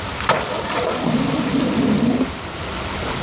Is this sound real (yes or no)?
yes